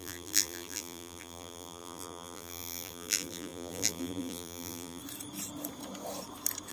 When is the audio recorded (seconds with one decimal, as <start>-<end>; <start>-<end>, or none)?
5.0-6.7